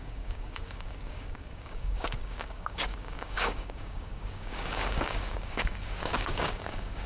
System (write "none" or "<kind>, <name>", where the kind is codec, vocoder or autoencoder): codec, DAC